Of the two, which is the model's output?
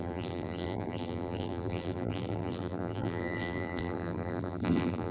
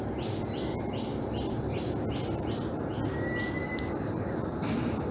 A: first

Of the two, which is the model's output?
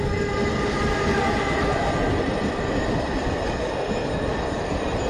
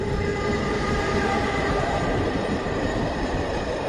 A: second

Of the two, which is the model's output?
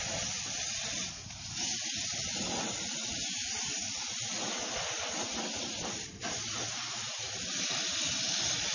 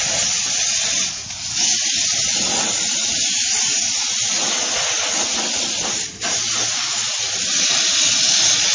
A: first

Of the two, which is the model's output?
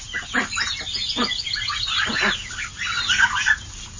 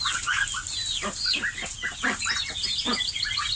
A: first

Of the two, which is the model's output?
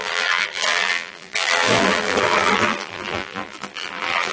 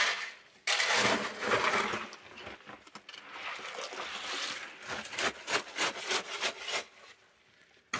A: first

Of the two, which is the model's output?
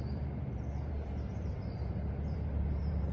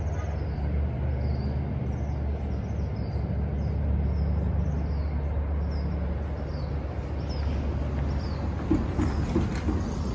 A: first